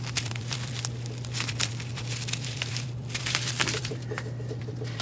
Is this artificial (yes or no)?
yes